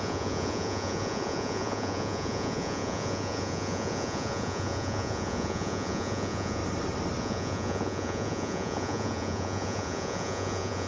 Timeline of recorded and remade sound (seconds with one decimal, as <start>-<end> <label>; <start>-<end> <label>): 0.0-6.6 remade; 6.6-7.2 recorded; 7.2-10.9 remade